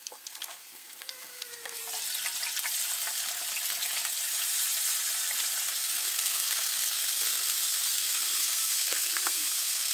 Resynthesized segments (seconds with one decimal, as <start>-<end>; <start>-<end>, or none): 0.0-1.8; 5.7-9.9